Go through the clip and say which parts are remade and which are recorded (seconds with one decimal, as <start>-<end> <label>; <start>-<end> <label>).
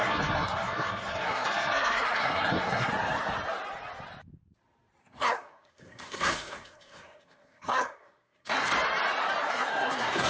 0.0-2.9 remade; 2.9-5.0 recorded; 5.0-8.7 remade; 8.7-9.5 recorded; 9.5-10.3 remade